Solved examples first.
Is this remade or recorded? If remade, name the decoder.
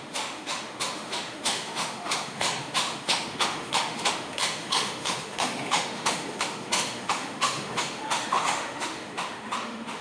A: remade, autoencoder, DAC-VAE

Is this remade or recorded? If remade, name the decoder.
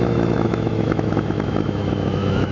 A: remade, autoencoder, DAC-VAE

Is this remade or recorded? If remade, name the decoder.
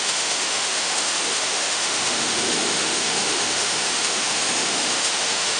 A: remade, autoencoder, DAC-VAE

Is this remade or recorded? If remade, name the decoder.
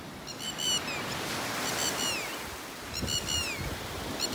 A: recorded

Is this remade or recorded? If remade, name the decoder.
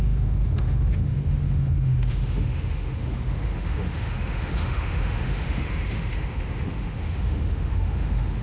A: remade, autoencoder, DAC-VAE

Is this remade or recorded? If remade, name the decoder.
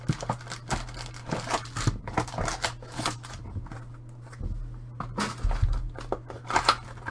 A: recorded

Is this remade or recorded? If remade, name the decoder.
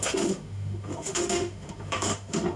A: remade, autoencoder, DAC-VAE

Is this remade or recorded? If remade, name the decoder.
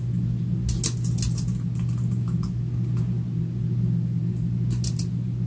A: recorded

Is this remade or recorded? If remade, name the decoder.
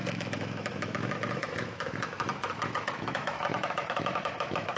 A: remade, autoencoder, DAC-VAE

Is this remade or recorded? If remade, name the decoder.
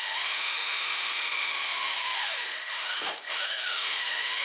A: remade, autoencoder, DAC-VAE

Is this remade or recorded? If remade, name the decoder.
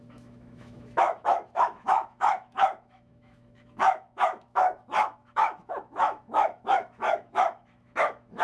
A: remade, autoencoder, DAC-VAE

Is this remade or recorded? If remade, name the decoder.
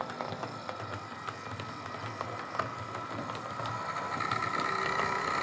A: recorded